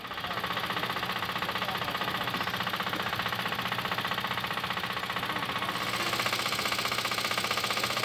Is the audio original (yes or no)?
yes